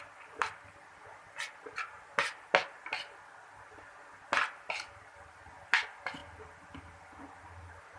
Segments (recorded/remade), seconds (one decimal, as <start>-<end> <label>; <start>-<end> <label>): 0.0-8.0 recorded